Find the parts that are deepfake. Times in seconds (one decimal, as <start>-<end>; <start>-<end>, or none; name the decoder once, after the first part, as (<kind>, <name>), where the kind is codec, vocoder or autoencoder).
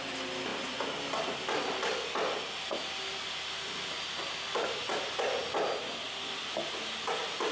none